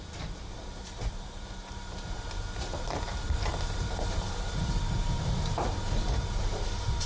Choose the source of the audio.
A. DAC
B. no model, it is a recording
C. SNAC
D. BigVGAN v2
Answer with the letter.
D